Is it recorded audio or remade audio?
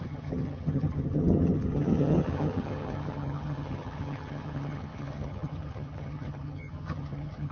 remade